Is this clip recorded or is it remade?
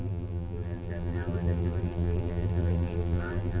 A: remade